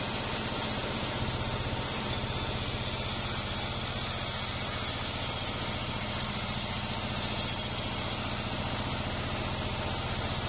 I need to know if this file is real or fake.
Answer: real